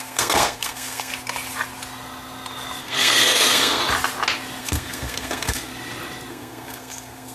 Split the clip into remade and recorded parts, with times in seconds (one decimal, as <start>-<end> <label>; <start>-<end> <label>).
0.0-1.1 remade; 1.1-2.8 recorded; 2.8-3.8 remade; 3.8-4.6 recorded; 4.6-5.7 remade; 5.7-6.3 recorded; 6.3-7.3 remade